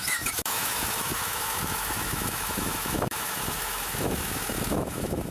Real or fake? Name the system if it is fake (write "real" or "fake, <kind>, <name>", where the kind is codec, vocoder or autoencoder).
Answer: fake, autoencoder, DAC-VAE